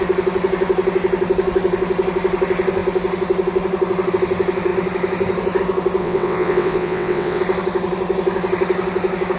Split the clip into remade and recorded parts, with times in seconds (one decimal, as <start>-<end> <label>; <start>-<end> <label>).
0.0-6.0 recorded; 6.0-7.4 remade; 7.4-9.4 recorded